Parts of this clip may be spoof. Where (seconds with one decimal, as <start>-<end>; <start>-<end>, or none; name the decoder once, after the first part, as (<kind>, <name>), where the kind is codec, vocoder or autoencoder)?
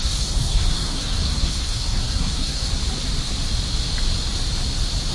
0.0-2.8 (codec, SNAC)